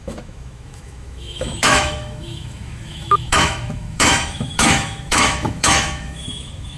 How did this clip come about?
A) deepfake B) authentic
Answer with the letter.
A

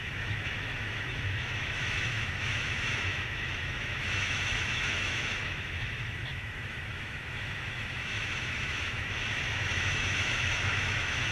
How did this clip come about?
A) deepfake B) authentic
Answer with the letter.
A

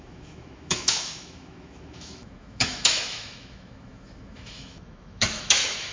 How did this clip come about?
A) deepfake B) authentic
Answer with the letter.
A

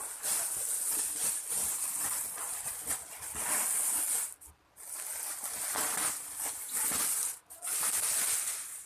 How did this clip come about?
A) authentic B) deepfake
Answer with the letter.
A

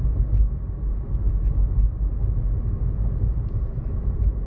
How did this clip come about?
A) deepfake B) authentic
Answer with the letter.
B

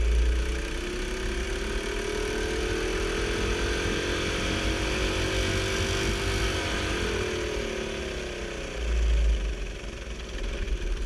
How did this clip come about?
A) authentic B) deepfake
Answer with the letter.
A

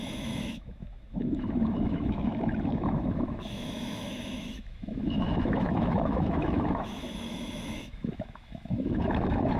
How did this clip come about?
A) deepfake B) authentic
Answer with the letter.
A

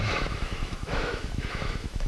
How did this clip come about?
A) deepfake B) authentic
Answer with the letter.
A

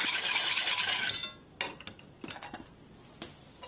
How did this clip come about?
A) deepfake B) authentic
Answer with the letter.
B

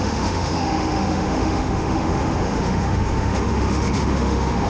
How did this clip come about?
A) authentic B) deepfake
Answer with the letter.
B